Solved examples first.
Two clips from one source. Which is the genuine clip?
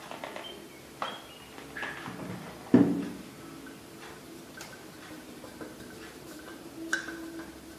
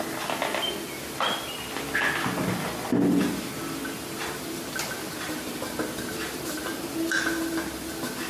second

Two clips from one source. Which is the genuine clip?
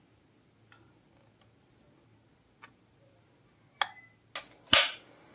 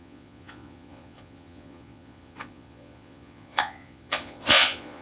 first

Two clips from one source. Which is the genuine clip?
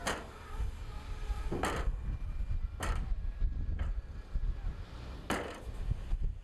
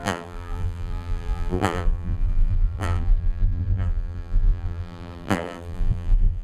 first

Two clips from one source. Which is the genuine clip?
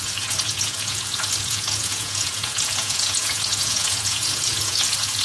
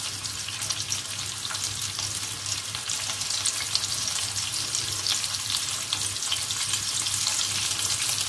second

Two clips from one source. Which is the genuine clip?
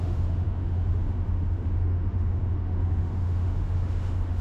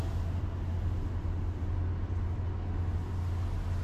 second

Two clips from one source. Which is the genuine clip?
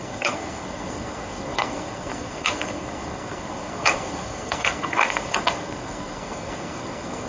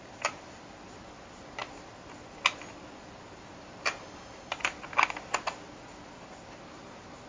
second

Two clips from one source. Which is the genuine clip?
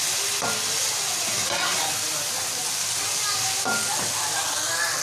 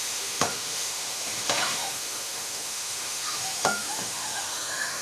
first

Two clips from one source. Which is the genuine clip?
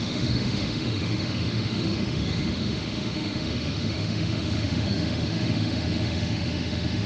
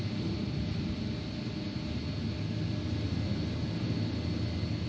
second